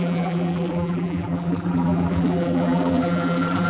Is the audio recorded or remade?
remade